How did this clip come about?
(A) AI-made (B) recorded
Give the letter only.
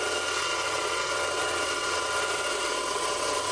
A